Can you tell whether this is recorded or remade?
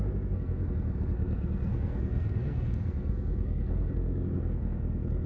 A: remade